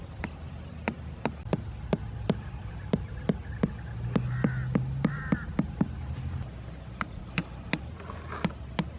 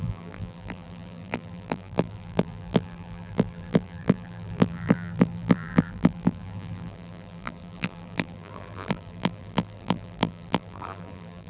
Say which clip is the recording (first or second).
first